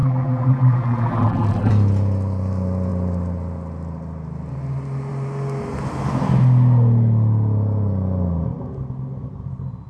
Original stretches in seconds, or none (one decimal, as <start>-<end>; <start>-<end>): 1.7-9.9